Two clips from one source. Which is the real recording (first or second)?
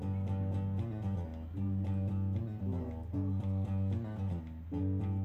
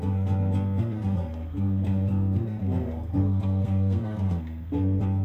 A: first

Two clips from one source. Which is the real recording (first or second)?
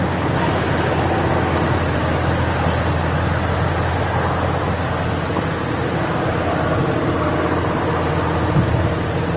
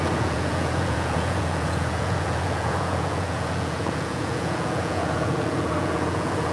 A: first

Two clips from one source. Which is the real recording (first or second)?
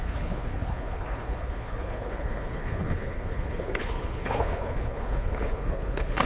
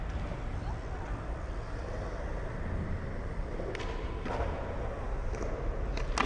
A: second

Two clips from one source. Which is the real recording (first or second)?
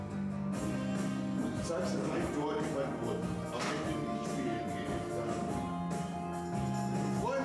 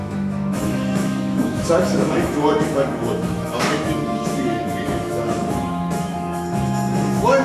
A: first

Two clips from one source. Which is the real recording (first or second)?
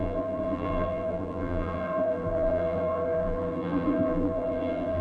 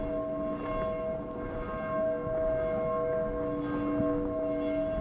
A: second